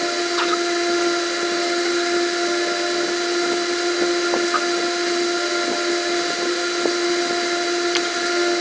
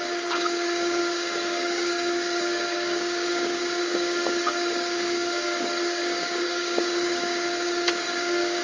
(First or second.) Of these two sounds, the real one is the first